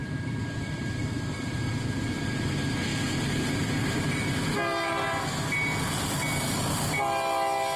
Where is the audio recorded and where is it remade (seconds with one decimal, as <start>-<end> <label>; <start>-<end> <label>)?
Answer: 0.0-2.5 remade; 2.5-2.9 recorded; 2.9-4.1 remade; 4.1-7.8 recorded